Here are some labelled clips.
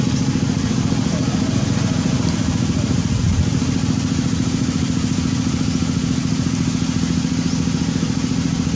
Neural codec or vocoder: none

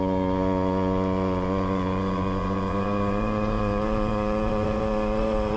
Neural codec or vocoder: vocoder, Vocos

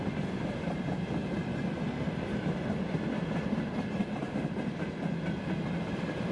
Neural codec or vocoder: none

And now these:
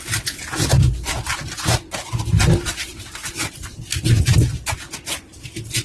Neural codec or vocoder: none